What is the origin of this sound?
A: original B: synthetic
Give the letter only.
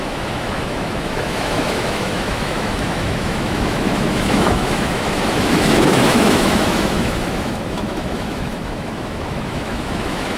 B